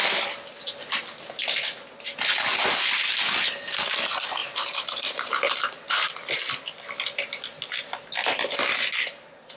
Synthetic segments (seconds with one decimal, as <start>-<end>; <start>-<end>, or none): 4.4-6.3